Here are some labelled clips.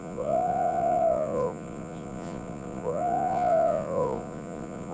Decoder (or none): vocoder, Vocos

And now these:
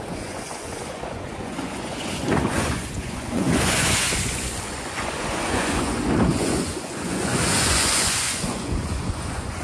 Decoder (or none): vocoder, Vocos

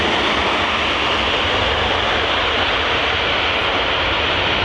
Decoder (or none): none